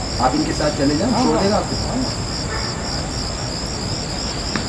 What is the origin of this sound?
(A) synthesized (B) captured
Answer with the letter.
B